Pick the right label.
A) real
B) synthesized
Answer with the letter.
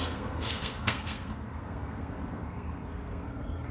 B